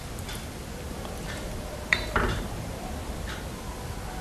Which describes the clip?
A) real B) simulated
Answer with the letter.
B